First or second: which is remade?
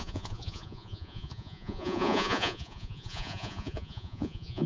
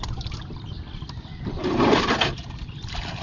first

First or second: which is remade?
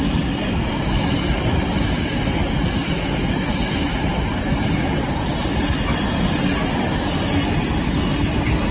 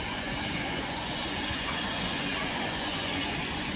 second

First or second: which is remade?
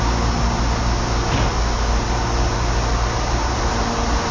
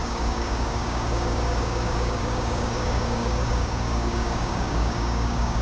second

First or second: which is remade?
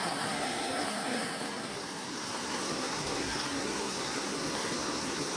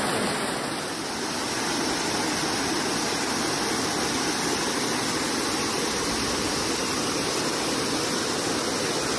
first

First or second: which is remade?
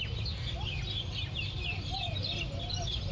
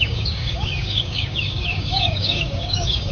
second